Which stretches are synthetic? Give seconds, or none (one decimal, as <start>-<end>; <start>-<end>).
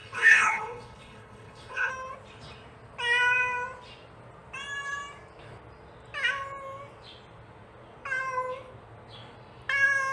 0.0-1.9